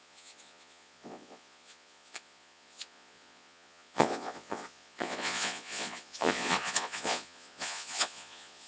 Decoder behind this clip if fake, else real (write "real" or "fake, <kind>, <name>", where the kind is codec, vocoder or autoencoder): fake, vocoder, Vocos